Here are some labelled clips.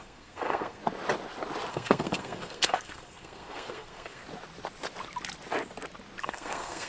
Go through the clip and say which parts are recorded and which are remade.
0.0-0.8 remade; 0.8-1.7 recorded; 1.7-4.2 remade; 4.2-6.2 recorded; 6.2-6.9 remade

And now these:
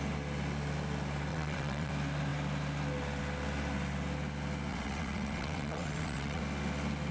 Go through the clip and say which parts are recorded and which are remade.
0.0-1.3 recorded; 1.3-1.9 remade; 1.9-4.7 recorded; 4.7-6.4 remade; 6.4-7.1 recorded